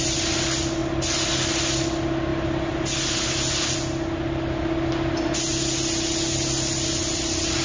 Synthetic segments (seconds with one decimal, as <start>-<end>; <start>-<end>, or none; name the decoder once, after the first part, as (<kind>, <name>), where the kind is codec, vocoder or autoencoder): none